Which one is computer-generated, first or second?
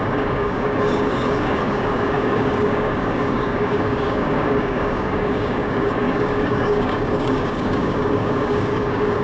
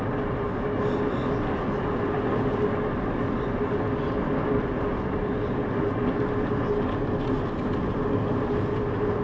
first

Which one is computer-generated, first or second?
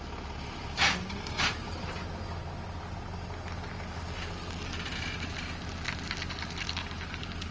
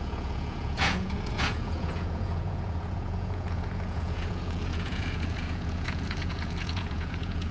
second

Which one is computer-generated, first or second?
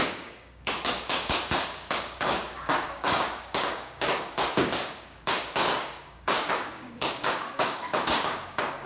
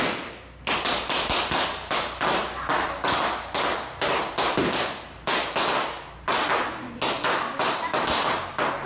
first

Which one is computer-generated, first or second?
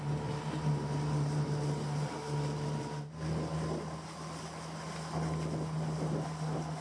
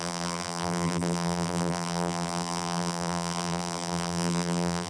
second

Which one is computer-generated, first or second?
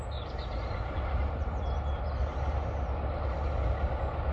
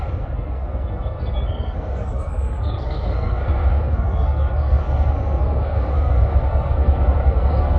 second